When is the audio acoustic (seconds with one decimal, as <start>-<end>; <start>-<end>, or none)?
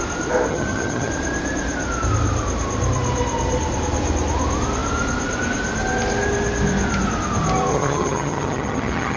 0.0-0.5; 1.1-7.7